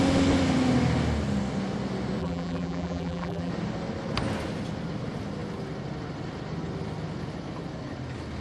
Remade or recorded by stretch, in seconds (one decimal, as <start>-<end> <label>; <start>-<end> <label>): 0.0-2.2 recorded; 2.2-3.5 remade; 3.5-8.4 recorded